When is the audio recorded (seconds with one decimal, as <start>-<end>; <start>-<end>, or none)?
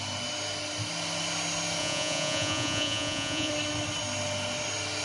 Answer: 0.0-1.8; 3.5-5.0